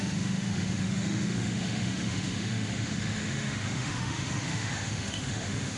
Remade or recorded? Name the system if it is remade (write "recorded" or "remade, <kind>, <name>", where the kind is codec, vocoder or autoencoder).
remade, autoencoder, DAC-VAE